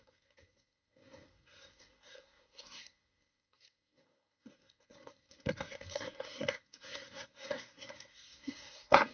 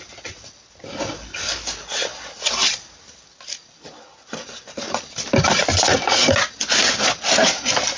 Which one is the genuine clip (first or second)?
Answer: second